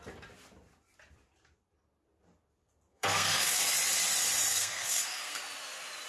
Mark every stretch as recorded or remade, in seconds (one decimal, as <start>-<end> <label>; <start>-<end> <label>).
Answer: 0.0-2.9 recorded; 2.9-3.6 remade; 3.6-4.5 recorded; 4.5-5.4 remade; 5.4-6.1 recorded